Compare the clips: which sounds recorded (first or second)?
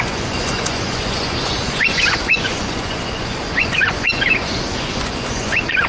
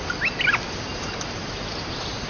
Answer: second